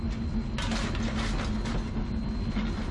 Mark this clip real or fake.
real